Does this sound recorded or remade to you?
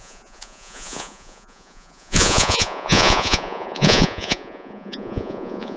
remade